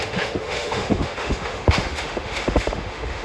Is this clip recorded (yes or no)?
no